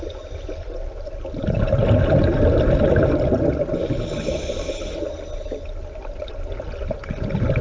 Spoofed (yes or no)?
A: no